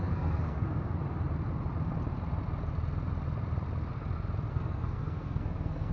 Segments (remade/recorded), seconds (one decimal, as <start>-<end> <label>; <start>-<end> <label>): 0.0-1.0 remade; 1.0-4.5 recorded; 4.5-5.9 remade